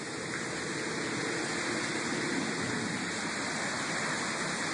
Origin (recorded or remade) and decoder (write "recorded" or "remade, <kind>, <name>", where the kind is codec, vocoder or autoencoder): recorded